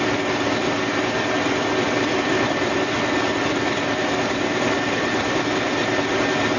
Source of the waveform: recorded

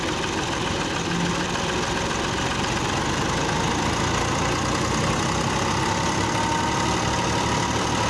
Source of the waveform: recorded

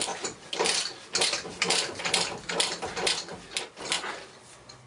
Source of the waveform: recorded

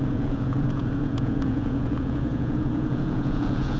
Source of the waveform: remade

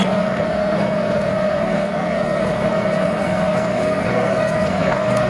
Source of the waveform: remade